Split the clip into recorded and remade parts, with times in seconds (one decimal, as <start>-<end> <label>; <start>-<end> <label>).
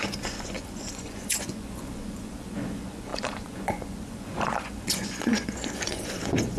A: 0.0-6.6 remade